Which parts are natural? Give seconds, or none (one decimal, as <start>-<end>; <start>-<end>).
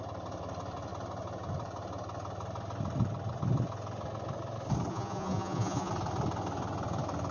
0.0-4.9; 5.9-7.3